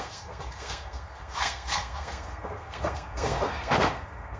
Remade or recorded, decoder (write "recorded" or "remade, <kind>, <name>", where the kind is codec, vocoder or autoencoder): remade, codec, SNAC